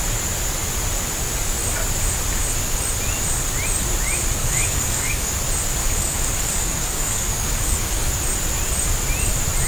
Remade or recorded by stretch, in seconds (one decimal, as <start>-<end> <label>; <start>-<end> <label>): 0.0-4.4 recorded; 4.4-5.3 remade; 5.3-5.8 recorded; 5.8-8.1 remade; 8.1-9.7 recorded